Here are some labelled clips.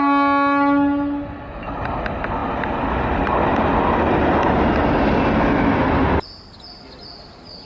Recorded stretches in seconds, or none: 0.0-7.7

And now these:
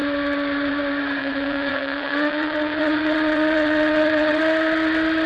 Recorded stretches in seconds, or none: 0.0-1.2; 4.4-5.3